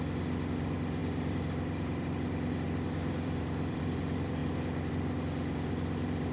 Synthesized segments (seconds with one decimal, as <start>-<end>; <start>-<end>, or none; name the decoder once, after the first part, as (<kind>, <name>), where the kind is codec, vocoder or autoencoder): 0.0-4.4 (vocoder, BigVGAN v2); 4.9-6.3